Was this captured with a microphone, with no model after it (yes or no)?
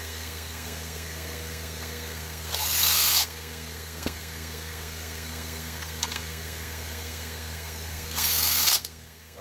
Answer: no